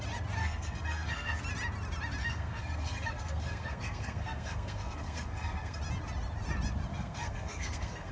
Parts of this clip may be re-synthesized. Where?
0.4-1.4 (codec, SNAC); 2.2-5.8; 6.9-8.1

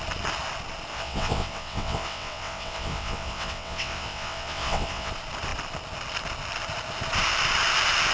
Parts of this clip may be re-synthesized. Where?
0.9-5.1 (vocoder, WaveNeXt)

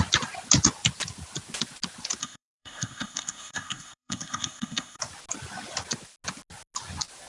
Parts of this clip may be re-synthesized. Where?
2.2-5.0 (codec, SNAC)